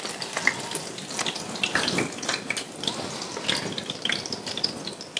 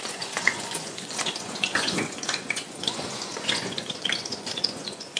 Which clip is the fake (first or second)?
second